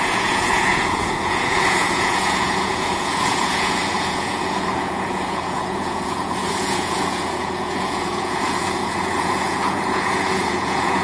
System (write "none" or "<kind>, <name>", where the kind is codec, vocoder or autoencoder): vocoder, Vocos